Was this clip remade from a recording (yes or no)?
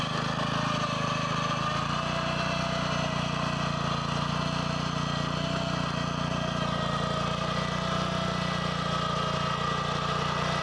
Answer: no